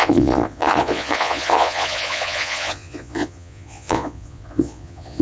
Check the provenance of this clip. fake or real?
fake